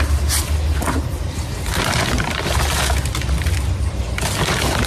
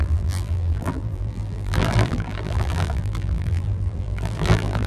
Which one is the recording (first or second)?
first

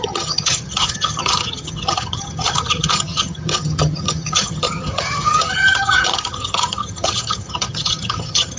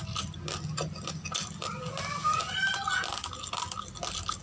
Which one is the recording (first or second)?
second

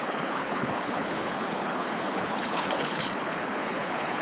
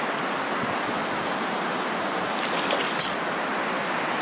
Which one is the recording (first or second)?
second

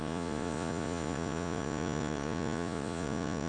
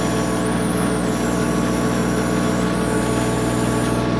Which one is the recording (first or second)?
second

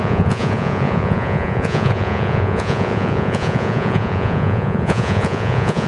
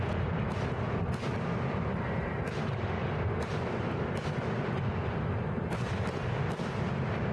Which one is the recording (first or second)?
second